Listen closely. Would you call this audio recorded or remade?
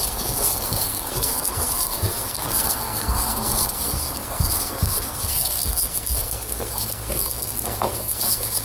remade